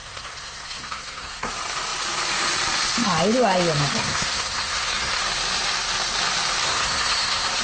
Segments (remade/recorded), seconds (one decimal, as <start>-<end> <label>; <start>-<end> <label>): 0.0-1.5 remade; 1.5-4.0 recorded; 4.0-5.2 remade; 5.2-6.6 recorded; 6.6-7.6 remade

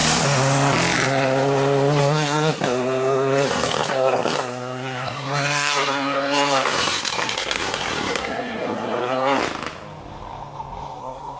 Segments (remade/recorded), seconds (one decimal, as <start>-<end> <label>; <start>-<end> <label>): 0.0-2.0 recorded; 2.0-9.4 remade; 9.4-11.0 recorded; 11.0-11.4 remade

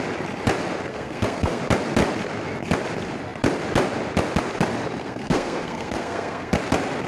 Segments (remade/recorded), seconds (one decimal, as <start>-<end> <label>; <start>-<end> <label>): 0.0-0.9 recorded; 0.9-1.6 remade; 1.6-5.0 recorded; 5.0-6.5 remade; 6.5-7.1 recorded

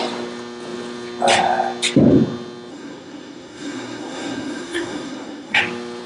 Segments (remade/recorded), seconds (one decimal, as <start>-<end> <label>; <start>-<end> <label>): 0.0-2.7 recorded; 2.7-5.6 remade; 5.6-6.1 recorded

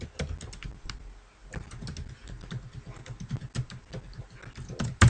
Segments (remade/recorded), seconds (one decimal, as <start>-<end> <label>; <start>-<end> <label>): 0.0-5.1 recorded

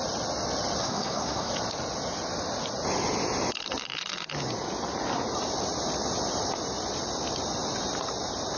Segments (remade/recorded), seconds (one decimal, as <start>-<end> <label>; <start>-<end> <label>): 0.0-0.8 recorded; 0.8-1.5 remade; 1.5-8.6 recorded

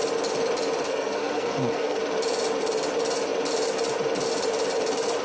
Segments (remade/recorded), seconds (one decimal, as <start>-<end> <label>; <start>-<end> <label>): 0.0-0.9 recorded; 0.9-2.0 remade; 2.0-5.2 recorded